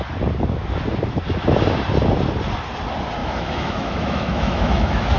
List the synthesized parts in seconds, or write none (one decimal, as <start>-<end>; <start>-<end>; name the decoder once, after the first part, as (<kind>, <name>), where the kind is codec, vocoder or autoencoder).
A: 3.2-5.2 (autoencoder, DAC-VAE)